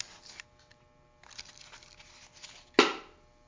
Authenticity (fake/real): real